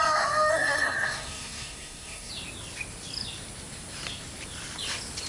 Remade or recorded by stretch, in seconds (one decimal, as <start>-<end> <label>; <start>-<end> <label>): 0.0-0.5 recorded; 0.5-2.3 remade; 2.3-5.3 recorded